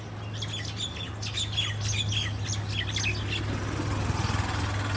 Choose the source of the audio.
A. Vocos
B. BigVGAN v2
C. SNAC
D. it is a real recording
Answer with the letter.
D